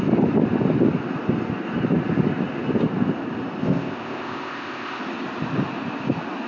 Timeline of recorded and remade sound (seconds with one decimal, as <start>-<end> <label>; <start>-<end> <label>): 0.0-3.6 recorded; 3.6-5.0 remade; 5.0-6.5 recorded